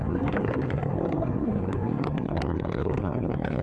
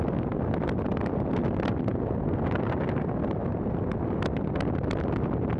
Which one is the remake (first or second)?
first